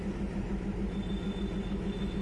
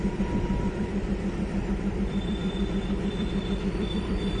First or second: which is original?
first